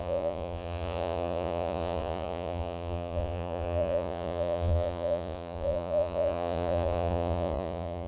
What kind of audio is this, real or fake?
fake